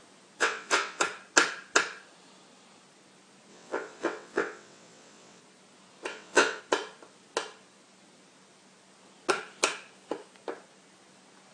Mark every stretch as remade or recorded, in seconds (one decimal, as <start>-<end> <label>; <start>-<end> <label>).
0.0-0.4 recorded; 0.4-1.0 remade; 1.0-3.5 recorded; 3.5-5.4 remade; 5.4-6.1 recorded; 6.1-6.6 remade; 6.6-11.5 recorded